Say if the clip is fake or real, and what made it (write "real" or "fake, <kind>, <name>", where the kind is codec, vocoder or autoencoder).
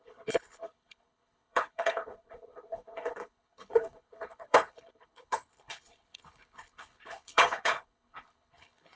fake, codec, HILCodec